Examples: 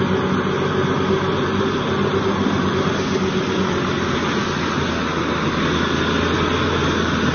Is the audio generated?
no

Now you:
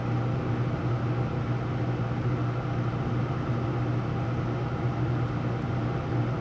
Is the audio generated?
no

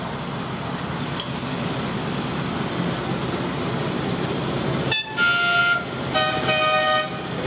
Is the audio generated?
no